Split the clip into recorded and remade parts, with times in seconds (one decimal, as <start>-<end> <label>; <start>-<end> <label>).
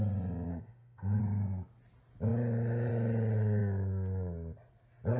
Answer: 0.0-0.5 recorded; 0.5-1.2 remade; 1.2-5.2 recorded